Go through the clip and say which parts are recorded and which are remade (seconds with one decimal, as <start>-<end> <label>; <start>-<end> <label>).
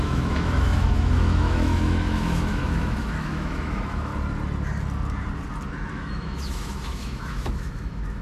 0.0-4.1 remade; 4.1-5.9 recorded; 5.9-8.2 remade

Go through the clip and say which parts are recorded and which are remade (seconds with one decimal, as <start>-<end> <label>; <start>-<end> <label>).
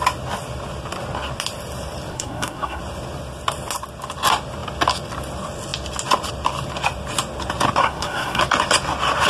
0.0-2.1 recorded; 2.1-2.8 remade; 2.8-7.8 recorded; 7.8-8.4 remade; 8.4-9.3 recorded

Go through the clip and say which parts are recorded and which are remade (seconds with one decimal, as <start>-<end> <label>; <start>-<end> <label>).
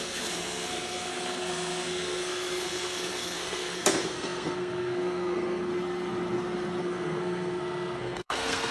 0.0-5.7 remade; 5.7-6.8 recorded; 6.8-8.7 remade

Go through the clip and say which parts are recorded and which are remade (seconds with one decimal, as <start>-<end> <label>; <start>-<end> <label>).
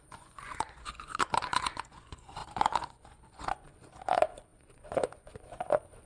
0.0-6.1 remade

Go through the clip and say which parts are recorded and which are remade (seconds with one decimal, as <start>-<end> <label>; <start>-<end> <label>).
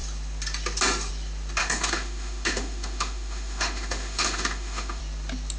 0.0-1.6 recorded; 1.6-5.0 remade; 5.0-5.6 recorded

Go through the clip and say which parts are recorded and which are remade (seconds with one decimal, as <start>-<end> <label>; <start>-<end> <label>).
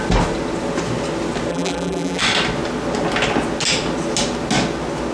0.0-1.5 recorded; 1.5-2.2 remade; 2.2-5.1 recorded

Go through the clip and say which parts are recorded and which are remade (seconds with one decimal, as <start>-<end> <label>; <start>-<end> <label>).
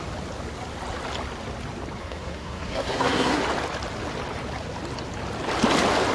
0.0-2.0 recorded; 2.0-3.4 remade; 3.4-6.1 recorded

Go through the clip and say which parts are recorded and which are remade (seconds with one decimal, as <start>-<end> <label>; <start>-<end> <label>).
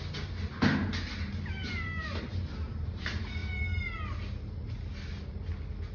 0.0-1.6 recorded; 1.6-3.0 remade; 3.0-5.9 recorded